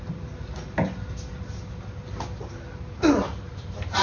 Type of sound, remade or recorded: recorded